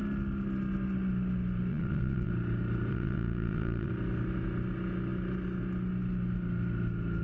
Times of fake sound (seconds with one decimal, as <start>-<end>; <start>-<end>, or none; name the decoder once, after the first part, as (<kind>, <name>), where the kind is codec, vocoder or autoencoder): 1.7-2.3 (vocoder, Vocos); 2.9-3.9